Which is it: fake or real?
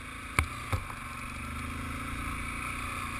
real